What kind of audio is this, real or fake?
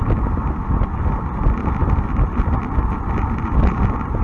real